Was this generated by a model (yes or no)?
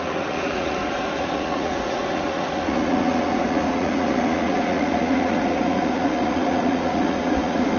yes